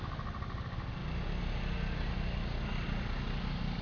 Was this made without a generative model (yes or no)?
yes